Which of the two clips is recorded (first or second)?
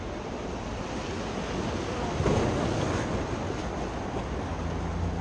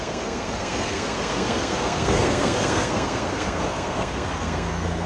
first